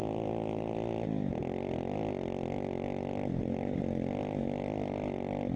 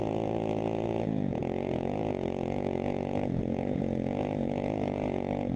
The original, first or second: first